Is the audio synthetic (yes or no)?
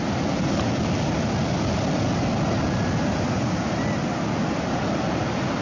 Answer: no